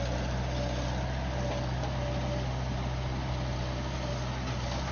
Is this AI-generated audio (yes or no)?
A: no